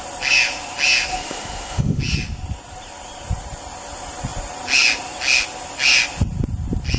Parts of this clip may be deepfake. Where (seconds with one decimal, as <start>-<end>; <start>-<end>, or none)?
1.1-2.0